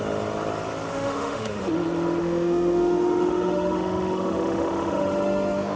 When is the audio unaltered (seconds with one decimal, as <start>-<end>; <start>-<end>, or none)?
0.0-0.9; 1.6-2.2